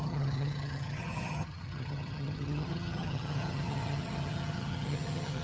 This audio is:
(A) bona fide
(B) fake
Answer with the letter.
B